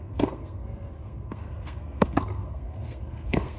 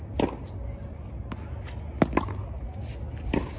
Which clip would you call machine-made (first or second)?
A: first